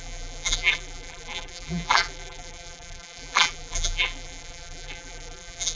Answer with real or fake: fake